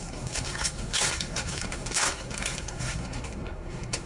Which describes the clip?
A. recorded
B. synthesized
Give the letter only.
B